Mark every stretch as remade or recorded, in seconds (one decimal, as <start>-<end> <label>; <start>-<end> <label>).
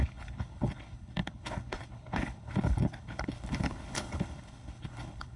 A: 0.0-5.4 remade